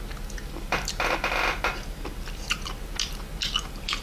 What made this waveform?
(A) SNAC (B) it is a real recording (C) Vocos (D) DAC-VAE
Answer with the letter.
B